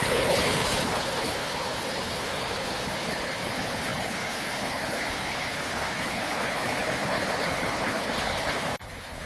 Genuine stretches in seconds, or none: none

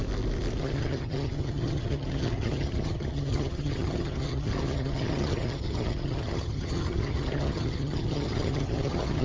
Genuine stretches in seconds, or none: 0.0-0.6

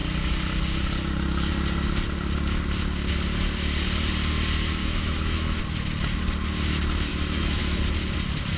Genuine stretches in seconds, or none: 0.0-4.8; 5.6-7.1; 7.8-8.6